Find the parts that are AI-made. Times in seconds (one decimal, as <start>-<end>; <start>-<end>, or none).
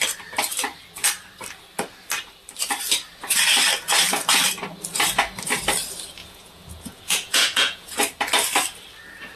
6.2-8.0